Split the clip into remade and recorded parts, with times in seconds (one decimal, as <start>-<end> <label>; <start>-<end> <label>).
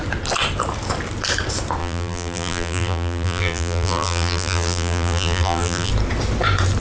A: 0.0-1.8 recorded; 1.8-5.9 remade; 5.9-6.8 recorded